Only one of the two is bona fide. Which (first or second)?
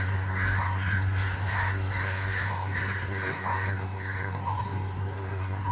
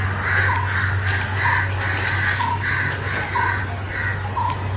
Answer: second